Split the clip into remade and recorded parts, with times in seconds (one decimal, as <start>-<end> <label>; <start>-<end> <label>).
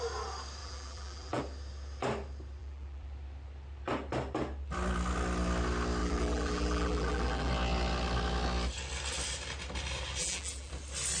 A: 0.0-0.6 recorded; 0.6-1.4 remade; 1.4-2.6 recorded; 2.6-3.1 remade; 3.1-6.0 recorded; 6.0-7.5 remade; 7.5-10.2 recorded; 10.2-10.7 remade; 10.7-11.2 recorded